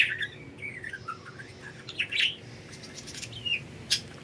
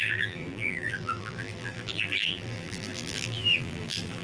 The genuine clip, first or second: first